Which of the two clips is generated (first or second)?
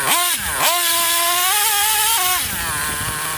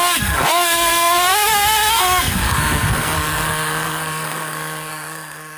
second